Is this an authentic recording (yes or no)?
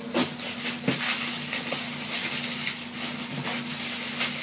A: yes